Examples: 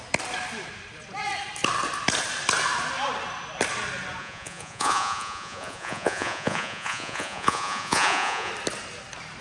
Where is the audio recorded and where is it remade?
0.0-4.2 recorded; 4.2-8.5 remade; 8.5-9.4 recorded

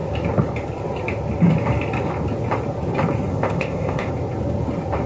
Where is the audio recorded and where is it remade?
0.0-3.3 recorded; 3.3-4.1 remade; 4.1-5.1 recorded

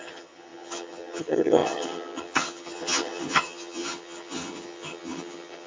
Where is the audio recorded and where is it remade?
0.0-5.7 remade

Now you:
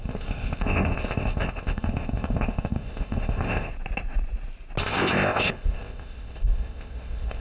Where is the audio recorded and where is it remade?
0.0-3.7 remade; 3.7-4.8 recorded; 4.8-7.4 remade

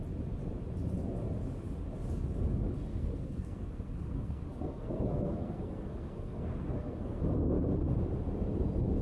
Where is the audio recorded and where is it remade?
0.0-2.9 recorded; 2.9-7.2 remade; 7.2-9.0 recorded

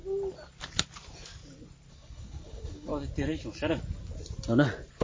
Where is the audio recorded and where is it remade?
0.0-1.9 recorded; 1.9-2.9 remade; 2.9-5.0 recorded

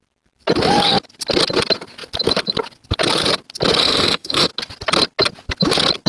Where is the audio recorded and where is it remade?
0.0-3.8 recorded; 3.8-4.5 remade; 4.5-6.1 recorded

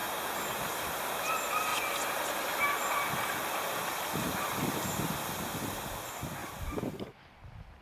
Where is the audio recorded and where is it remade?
0.0-7.8 recorded